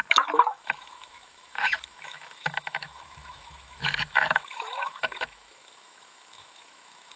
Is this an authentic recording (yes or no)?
no